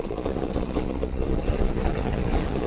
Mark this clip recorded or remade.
remade